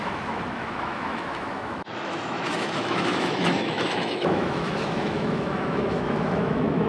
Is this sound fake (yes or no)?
yes